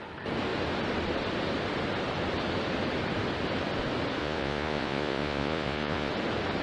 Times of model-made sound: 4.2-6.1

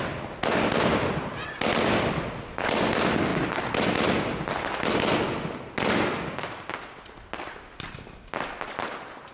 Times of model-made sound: none